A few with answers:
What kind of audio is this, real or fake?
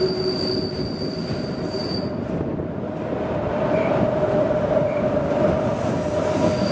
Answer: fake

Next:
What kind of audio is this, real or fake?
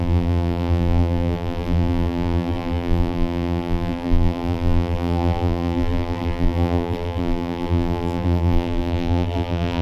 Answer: fake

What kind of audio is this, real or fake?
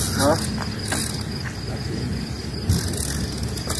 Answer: real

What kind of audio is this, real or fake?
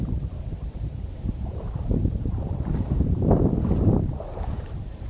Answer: fake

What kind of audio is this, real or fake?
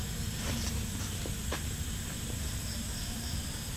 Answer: fake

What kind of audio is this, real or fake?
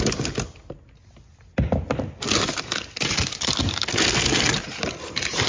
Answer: real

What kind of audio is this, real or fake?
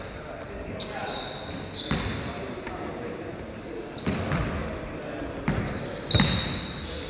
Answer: real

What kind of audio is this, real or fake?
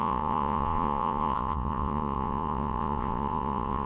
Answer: fake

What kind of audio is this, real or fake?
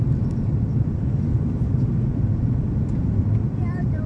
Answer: fake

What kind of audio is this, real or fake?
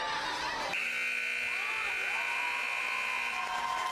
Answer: real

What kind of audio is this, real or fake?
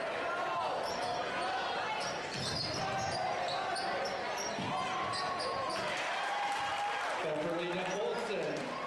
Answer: real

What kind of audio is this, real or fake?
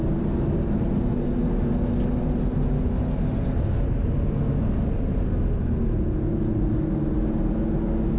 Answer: real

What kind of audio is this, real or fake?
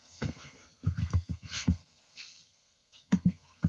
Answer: fake